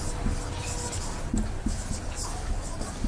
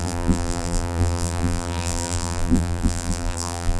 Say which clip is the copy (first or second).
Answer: second